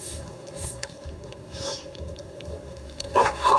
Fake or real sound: fake